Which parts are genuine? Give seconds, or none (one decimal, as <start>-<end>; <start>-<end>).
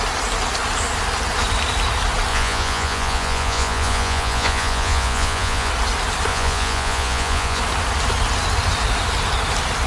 0.0-2.3; 5.7-6.3; 7.6-9.9